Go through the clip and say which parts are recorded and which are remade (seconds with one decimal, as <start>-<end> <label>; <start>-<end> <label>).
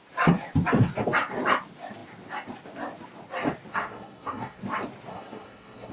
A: 0.0-3.7 recorded; 3.7-4.6 remade; 4.6-5.1 recorded; 5.1-5.9 remade